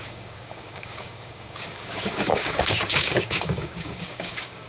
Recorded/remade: remade